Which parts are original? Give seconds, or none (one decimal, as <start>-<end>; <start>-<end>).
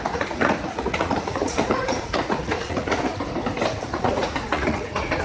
3.1-3.9